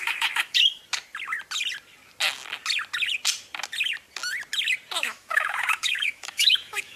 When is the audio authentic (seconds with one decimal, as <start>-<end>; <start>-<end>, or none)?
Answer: 0.8-5.0